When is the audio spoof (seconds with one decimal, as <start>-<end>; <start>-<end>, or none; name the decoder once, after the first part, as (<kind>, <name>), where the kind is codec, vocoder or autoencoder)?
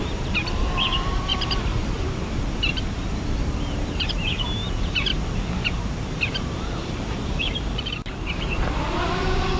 0.0-9.6 (vocoder, BigVGAN v2)